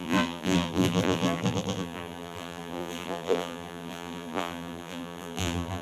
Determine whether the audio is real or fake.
fake